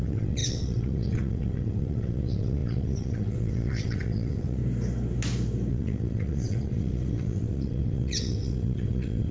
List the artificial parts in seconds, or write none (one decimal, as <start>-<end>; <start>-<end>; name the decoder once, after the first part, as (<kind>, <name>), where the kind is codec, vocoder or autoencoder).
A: 0.0-4.6 (vocoder, WaveNeXt); 5.7-9.3